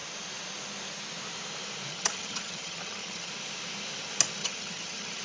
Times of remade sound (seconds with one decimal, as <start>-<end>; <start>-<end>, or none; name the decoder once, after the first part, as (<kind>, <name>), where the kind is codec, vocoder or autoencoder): 1.9-3.3 (vocoder, HiFi-GAN); 4.4-5.2

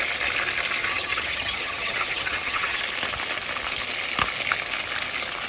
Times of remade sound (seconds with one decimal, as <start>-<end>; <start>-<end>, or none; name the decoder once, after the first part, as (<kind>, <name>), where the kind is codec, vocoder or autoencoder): 0.8-2.8 (vocoder, HiFi-GAN)

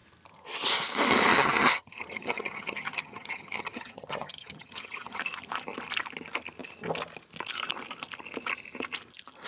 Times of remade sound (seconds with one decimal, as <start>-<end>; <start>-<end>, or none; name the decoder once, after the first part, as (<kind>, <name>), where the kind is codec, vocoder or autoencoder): 1.3-5.2 (vocoder, HiFi-GAN)

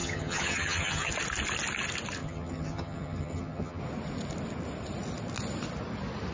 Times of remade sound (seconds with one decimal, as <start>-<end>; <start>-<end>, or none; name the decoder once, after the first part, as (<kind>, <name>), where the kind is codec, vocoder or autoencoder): 0.0-1.1 (vocoder, HiFi-GAN); 2.2-3.8

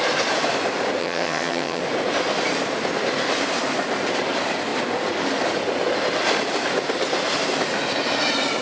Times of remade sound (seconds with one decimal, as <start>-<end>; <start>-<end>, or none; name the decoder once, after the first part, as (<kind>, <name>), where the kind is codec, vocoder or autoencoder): 1.0-1.8 (vocoder, HiFi-GAN)

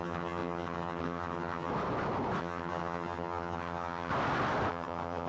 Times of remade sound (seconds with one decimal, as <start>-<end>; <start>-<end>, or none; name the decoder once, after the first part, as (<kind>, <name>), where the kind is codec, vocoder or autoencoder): 0.0-1.7 (vocoder, HiFi-GAN); 2.4-4.1; 4.7-5.3

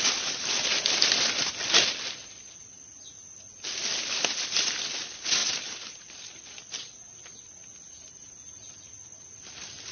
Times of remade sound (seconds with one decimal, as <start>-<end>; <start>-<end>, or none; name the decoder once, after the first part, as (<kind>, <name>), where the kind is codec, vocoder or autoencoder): none